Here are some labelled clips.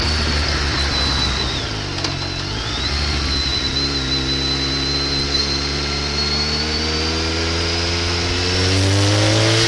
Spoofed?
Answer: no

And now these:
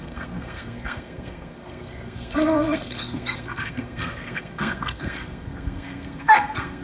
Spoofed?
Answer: yes